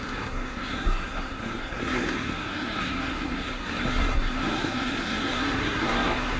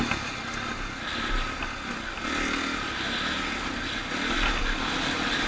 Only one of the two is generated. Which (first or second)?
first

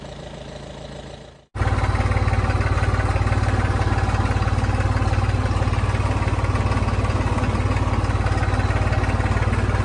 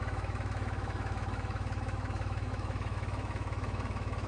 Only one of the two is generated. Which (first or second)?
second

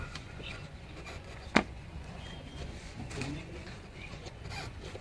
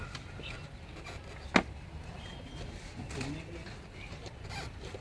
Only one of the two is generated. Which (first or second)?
first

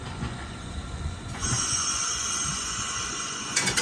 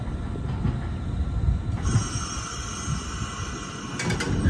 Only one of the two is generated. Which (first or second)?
first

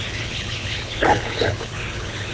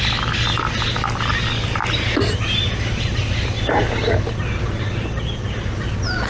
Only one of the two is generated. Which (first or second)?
first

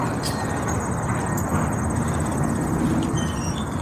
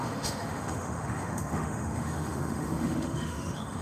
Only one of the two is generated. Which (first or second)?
second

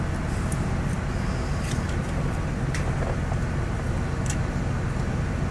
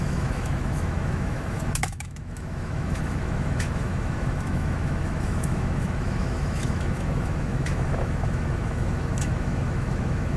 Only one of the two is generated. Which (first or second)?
second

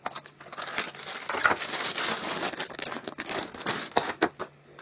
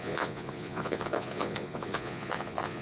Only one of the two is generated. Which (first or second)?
second